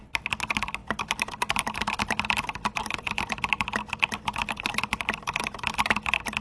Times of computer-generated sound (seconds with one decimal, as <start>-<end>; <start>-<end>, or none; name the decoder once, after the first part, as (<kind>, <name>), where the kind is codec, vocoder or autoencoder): none